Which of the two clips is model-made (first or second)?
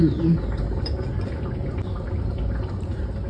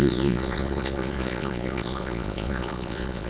second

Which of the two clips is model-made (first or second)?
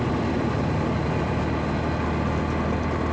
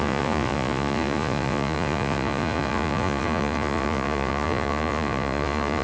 second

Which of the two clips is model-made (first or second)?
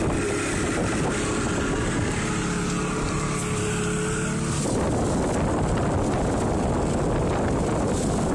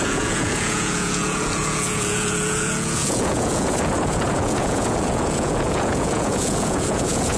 second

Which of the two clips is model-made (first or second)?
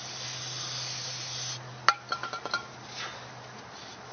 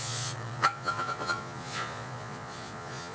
second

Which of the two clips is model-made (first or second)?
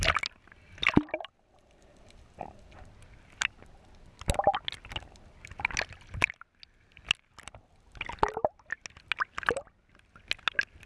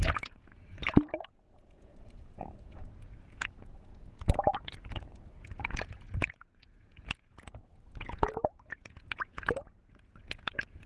second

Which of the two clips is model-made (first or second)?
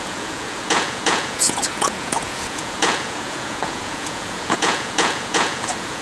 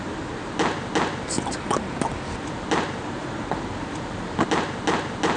first